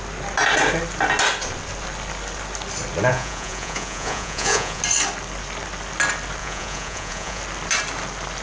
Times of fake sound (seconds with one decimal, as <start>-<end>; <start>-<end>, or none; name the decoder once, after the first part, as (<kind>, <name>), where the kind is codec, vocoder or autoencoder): 3.1-4.8 (vocoder, Vocos); 6.4-7.4